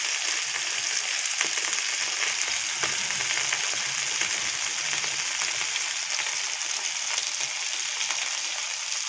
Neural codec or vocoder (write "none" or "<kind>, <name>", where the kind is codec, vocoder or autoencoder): none